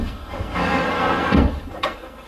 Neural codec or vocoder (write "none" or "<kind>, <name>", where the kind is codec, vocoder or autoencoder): codec, SNAC